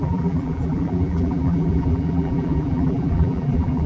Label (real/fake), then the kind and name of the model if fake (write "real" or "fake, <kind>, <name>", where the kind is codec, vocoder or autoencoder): fake, vocoder, BigVGAN v2